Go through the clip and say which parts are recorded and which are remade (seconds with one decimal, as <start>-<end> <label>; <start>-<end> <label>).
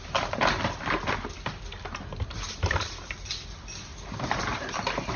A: 0.0-3.9 recorded; 3.9-4.4 remade; 4.4-5.2 recorded